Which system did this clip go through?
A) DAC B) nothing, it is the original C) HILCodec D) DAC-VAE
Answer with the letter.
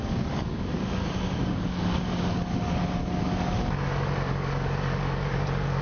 A